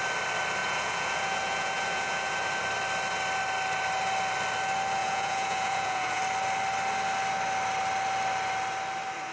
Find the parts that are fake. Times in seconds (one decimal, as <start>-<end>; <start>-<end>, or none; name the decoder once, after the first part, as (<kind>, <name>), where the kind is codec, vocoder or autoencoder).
0.6-2.6 (vocoder, Vocos); 5.0-6.2